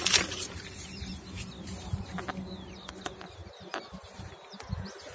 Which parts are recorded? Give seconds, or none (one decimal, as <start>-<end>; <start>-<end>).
0.0-5.1